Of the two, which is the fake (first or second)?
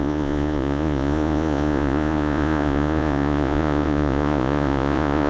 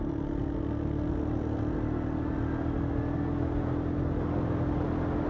first